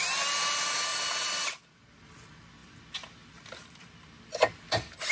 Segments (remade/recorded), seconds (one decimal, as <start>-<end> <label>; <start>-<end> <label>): 0.0-0.9 recorded; 0.9-1.6 remade; 1.6-2.6 recorded; 2.6-4.2 remade; 4.2-5.1 recorded